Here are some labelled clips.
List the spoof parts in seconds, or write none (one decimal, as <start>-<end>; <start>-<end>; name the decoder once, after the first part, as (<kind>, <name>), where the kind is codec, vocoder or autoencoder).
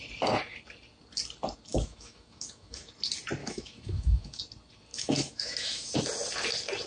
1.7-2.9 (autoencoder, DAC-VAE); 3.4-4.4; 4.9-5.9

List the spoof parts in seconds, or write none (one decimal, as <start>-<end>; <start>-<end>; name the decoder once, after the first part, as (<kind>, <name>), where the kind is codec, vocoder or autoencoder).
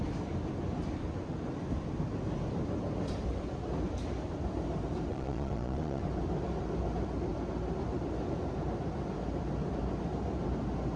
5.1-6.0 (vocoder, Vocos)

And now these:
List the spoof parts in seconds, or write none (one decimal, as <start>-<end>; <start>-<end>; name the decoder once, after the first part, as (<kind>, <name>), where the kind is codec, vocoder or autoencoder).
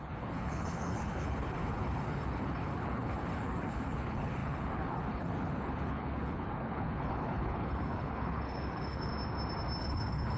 0.0-9.1 (codec, HILCodec); 9.8-10.4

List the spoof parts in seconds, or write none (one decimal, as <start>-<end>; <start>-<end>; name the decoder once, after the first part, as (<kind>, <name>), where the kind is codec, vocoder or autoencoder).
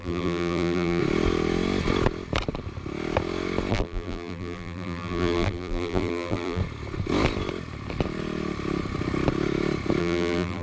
0.0-1.0 (vocoder, BigVGAN v2); 3.7-6.6; 10.0-10.6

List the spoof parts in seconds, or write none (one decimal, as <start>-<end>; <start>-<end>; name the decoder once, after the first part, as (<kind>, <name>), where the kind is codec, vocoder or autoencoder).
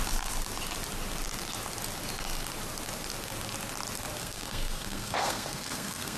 4.2-6.2 (codec, SNAC)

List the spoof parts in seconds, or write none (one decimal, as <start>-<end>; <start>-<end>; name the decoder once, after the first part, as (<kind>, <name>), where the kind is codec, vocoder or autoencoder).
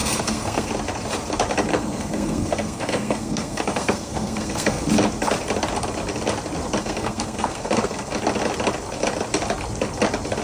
0.0-0.7 (codec, SNAC); 1.7-4.8; 6.8-8.1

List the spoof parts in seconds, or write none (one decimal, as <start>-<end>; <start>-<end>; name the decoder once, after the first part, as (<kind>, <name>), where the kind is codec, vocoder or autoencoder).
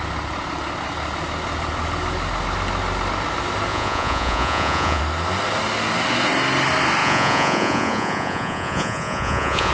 3.7-5.0 (vocoder, Vocos); 7.0-9.7